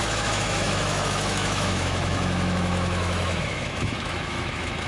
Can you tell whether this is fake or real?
fake